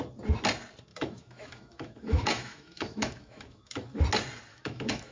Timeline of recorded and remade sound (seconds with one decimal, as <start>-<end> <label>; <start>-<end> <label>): 0.0-0.9 recorded; 0.9-4.0 remade; 4.0-4.5 recorded; 4.5-5.1 remade